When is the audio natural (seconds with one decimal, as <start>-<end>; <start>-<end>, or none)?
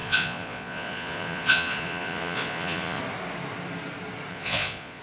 3.0-4.3